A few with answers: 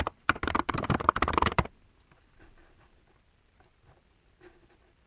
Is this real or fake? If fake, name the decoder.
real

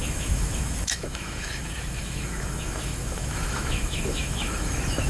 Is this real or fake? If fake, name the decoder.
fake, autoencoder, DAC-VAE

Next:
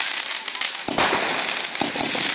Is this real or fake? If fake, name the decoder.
real